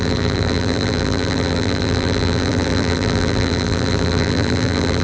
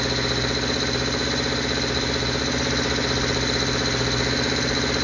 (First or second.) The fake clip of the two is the first